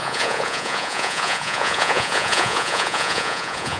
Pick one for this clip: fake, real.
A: fake